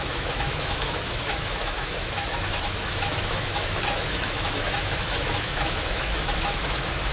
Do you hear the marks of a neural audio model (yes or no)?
yes